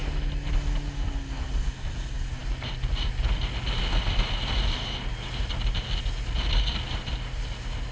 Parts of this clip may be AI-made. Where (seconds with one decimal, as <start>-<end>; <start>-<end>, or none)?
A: none